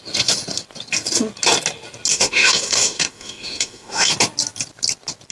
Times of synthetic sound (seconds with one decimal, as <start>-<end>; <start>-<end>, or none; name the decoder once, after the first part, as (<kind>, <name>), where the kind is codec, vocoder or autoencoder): 2.1-4.1 (autoencoder, DAC-VAE)